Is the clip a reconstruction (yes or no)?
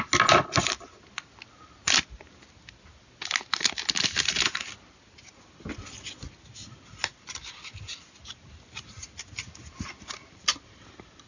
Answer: no